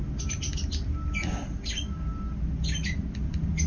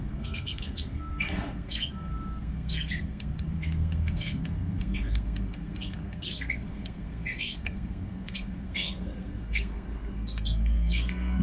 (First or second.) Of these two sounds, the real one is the first